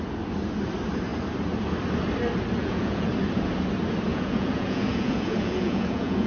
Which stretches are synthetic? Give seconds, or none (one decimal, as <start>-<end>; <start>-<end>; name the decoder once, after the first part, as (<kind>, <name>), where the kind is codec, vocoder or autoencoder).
2.6-3.1 (vocoder, Vocos); 4.1-6.3

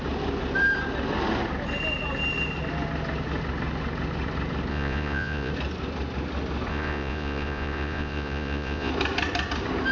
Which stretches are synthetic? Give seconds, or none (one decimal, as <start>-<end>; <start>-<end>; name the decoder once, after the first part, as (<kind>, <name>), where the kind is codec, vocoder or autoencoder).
4.7-5.5 (vocoder, Vocos); 6.7-8.9

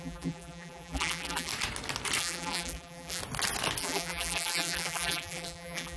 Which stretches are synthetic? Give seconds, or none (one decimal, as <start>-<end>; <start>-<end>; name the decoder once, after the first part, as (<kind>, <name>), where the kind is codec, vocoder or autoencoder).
0.0-1.5 (vocoder, BigVGAN v2); 2.2-3.2; 3.8-6.0

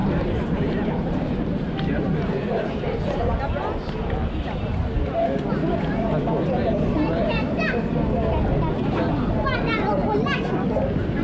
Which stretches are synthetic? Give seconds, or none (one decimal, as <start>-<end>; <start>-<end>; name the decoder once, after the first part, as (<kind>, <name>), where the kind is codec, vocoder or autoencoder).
0.0-3.2 (vocoder, BigVGAN v2)

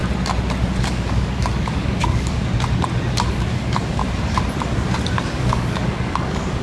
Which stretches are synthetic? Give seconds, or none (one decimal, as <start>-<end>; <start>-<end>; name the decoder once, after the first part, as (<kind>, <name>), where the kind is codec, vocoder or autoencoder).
0.8-2.5 (codec, DAC); 3.3-4.0; 5.3-6.6

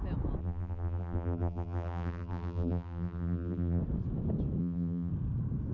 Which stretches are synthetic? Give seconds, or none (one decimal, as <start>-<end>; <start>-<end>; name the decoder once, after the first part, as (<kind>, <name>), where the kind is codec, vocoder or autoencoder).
0.4-3.8 (vocoder, BigVGAN v2); 4.6-5.1